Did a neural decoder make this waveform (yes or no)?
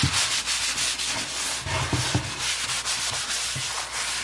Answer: no